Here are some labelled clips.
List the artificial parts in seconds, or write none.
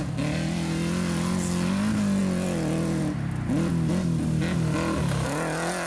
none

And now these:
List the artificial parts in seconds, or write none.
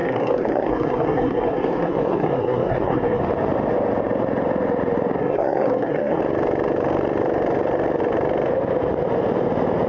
0.0-3.2 (codec, SNAC); 5.2-6.2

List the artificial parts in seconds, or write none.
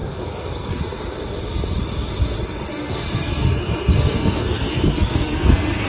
0.0-0.8 (codec, SNAC); 2.7-5.9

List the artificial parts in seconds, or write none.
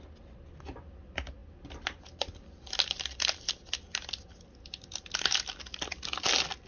none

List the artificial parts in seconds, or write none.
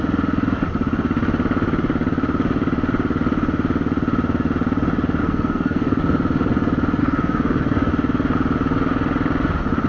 5.2-6.0 (codec, SNAC); 7.0-7.9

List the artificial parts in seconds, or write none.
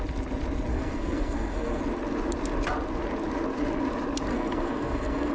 0.7-1.8 (codec, SNAC); 4.3-5.3